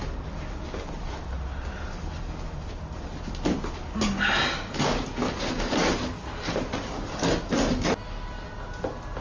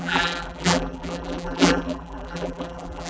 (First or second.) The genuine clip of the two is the first